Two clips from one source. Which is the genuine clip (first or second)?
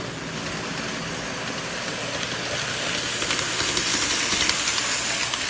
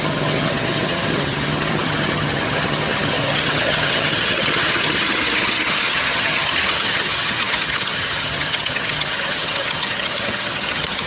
first